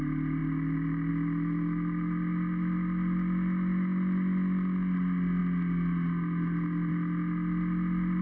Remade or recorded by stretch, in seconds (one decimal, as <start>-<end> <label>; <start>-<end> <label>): 0.0-8.2 recorded